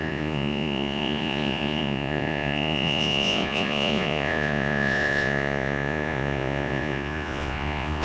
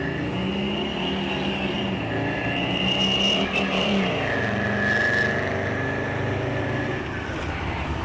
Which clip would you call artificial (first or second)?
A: first